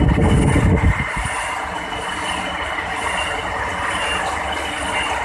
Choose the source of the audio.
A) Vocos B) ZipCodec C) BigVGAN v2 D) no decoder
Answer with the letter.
D